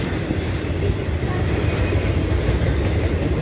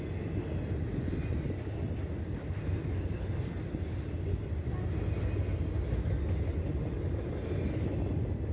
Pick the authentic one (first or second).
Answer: second